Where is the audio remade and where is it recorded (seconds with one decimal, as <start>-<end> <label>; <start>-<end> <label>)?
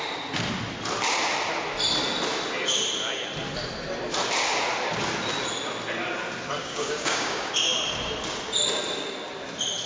0.0-6.6 recorded; 6.6-7.5 remade; 7.5-9.9 recorded